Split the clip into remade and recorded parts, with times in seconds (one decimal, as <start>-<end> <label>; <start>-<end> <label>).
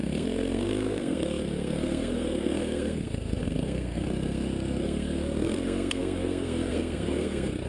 0.0-7.7 remade